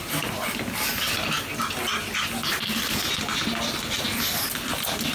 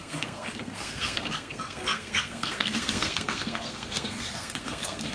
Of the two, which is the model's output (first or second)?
second